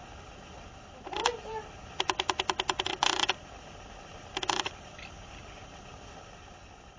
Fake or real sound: real